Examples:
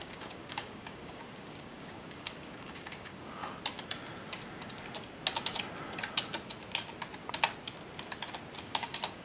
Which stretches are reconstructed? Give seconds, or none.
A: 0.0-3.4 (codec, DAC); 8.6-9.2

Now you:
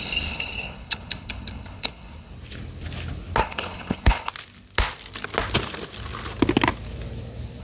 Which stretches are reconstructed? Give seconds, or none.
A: 0.0-2.3 (codec, HILCodec); 3.4-4.3